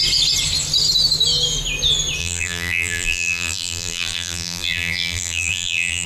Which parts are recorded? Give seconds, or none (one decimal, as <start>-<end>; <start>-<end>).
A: 0.0-2.2